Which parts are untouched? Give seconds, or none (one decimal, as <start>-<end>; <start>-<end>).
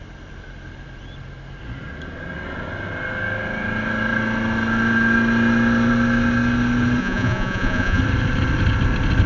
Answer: 0.0-7.0; 8.0-9.3